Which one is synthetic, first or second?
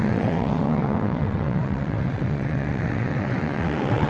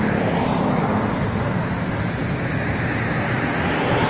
first